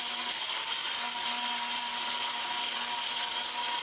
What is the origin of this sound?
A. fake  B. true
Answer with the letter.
B